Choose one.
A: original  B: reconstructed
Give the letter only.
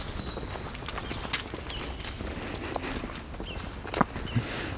A